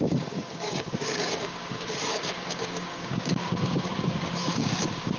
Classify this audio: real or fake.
fake